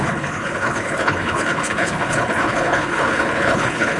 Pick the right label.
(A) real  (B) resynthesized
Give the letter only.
B